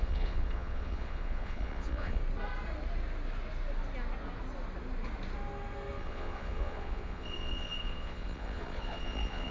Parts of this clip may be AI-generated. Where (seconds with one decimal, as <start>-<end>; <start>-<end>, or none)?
0.0-2.2; 6.0-9.5